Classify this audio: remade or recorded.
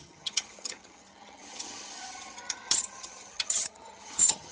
remade